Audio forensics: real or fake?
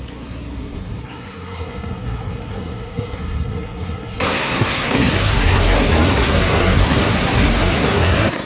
fake